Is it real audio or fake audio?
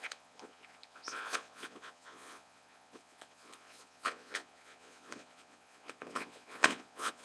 fake